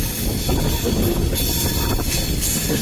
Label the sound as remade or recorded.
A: recorded